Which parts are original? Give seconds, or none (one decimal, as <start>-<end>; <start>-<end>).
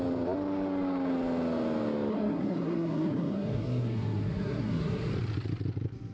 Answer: 0.0-2.1; 5.1-6.1